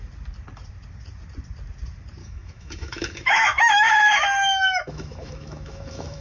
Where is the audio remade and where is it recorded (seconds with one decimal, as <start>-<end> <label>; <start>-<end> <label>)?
0.0-2.2 recorded; 2.2-6.2 remade